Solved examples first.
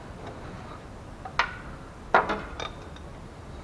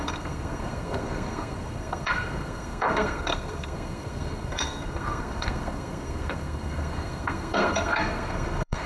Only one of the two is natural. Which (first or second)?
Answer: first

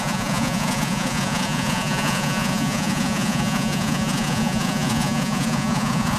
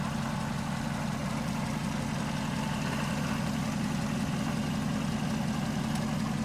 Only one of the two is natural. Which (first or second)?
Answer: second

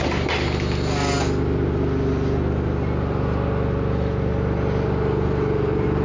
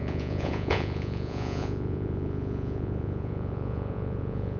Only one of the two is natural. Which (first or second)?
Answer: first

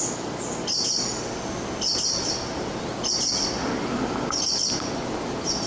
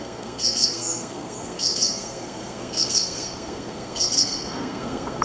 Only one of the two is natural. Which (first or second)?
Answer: first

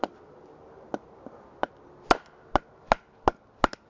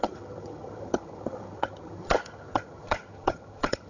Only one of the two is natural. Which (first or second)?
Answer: first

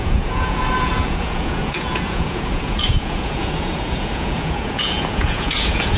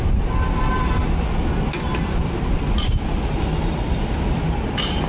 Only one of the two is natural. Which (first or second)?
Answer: second